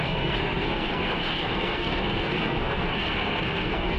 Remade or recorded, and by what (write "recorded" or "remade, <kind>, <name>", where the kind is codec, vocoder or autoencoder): remade, codec, SNAC